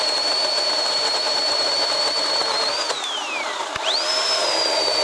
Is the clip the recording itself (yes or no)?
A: no